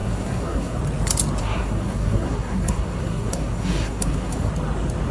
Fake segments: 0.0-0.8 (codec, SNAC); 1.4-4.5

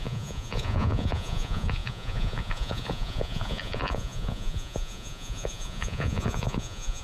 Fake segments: 0.0-7.0 (vocoder, Vocos)

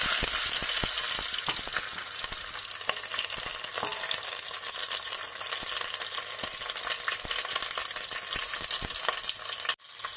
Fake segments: none

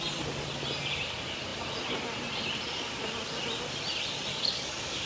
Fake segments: 4.3-5.1 (codec, DAC)

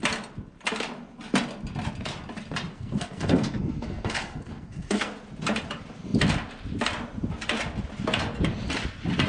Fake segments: 2.7-5.1 (codec, SNAC)

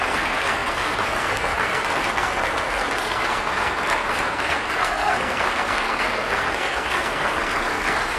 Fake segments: 0.0-8.2 (codec, SNAC)

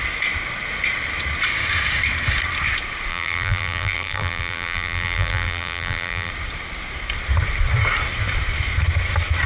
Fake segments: 3.1-6.3 (vocoder, BigVGAN v2)

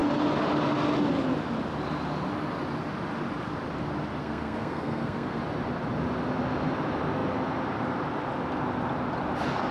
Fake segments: 4.2-5.4 (codec, SNAC)